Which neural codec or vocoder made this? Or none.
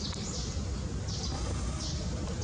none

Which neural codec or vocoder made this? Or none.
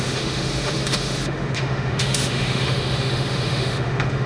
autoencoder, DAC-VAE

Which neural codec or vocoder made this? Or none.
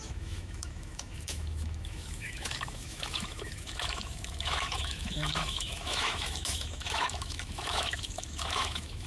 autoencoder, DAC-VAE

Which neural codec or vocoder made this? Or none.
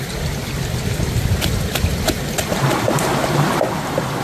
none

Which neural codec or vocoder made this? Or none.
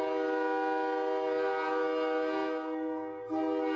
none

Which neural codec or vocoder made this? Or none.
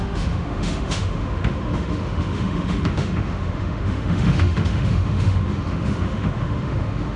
autoencoder, DAC-VAE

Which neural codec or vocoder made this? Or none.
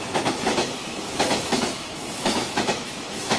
autoencoder, DAC-VAE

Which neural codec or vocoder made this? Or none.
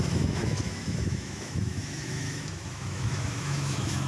autoencoder, DAC-VAE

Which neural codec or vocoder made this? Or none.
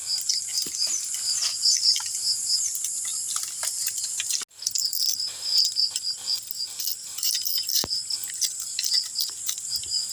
none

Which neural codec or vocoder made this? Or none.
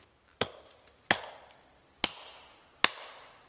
none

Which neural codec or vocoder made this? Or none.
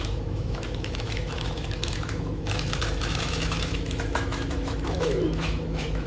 autoencoder, DAC-VAE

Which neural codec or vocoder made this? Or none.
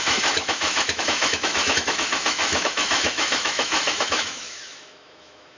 autoencoder, DAC-VAE